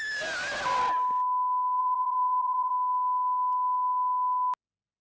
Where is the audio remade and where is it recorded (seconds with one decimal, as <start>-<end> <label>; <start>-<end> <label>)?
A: 0.0-1.8 recorded; 1.8-2.7 remade; 2.7-5.0 recorded